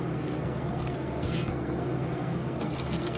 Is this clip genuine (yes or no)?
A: no